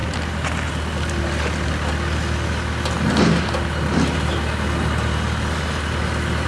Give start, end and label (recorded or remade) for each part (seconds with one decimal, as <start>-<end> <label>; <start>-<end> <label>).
0.0-6.5 recorded